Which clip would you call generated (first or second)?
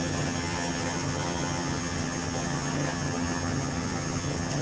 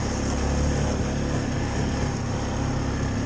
first